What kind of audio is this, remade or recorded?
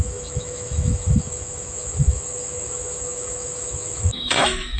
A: remade